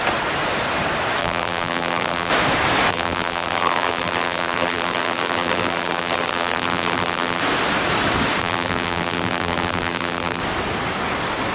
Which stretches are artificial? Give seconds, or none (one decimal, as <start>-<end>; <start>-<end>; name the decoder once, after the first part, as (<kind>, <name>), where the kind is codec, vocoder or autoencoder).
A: 1.2-2.3 (vocoder, BigVGAN v2); 2.9-7.4; 8.4-10.4